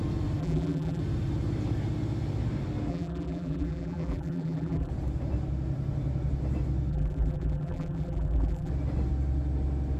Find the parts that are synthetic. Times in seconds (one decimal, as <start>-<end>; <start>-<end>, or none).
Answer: 0.4-1.0; 2.9-4.9; 6.9-8.7